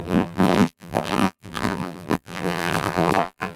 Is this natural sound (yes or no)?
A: no